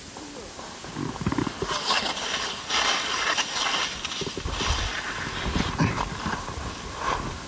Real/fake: real